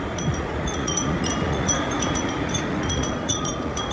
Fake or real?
fake